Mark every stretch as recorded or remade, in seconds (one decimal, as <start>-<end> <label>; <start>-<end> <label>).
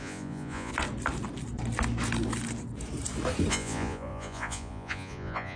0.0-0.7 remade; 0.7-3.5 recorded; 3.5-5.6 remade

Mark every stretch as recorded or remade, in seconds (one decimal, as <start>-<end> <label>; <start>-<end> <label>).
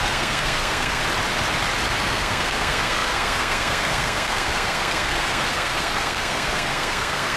0.0-1.0 remade; 1.0-2.0 recorded; 2.0-7.4 remade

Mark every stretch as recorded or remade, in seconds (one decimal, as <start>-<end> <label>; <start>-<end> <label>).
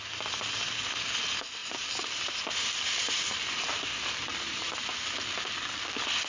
0.0-1.6 recorded; 1.6-3.9 remade; 3.9-4.3 recorded; 4.3-5.1 remade; 5.1-6.3 recorded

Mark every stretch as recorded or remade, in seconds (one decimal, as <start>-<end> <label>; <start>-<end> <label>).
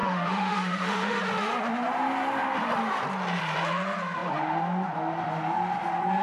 0.0-1.2 remade; 1.2-6.2 recorded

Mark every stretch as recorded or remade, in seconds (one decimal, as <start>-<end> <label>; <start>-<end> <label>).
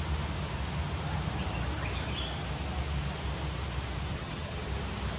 0.0-4.1 recorded; 4.1-4.7 remade; 4.7-5.2 recorded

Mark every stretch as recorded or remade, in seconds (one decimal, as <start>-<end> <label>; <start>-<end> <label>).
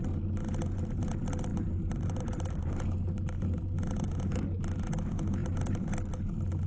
0.0-1.5 recorded; 1.5-2.7 remade; 2.7-5.4 recorded; 5.4-5.9 remade; 5.9-6.7 recorded